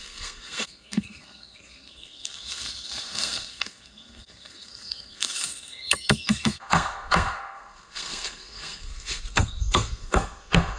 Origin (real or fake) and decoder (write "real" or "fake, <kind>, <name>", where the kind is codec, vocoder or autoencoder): fake, codec, SNAC